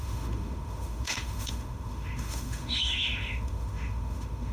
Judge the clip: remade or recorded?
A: remade